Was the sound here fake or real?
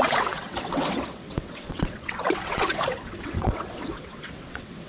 fake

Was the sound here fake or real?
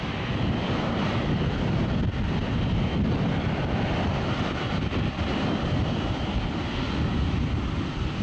real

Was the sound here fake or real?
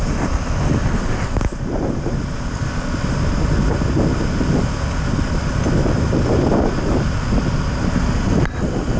real